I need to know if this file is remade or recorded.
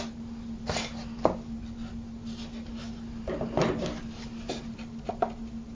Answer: recorded